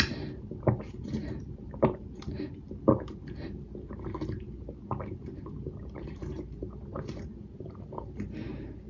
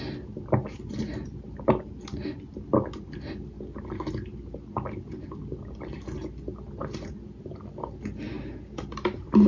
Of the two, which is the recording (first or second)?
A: second